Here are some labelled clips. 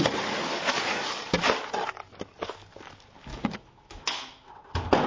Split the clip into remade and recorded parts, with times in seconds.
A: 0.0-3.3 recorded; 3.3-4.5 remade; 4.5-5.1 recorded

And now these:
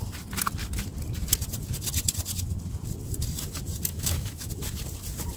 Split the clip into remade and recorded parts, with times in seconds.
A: 0.0-3.9 recorded; 3.9-4.5 remade; 4.5-5.4 recorded